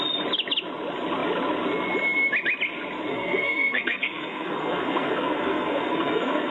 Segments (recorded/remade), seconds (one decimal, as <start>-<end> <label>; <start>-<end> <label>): 0.0-3.1 recorded; 3.1-6.5 remade